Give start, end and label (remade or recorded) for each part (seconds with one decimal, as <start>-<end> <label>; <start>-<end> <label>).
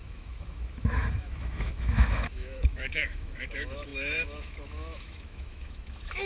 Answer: 0.0-6.3 remade